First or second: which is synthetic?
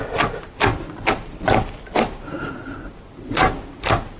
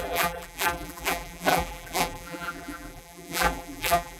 second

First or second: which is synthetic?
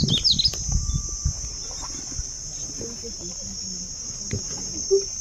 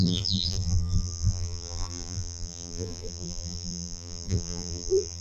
second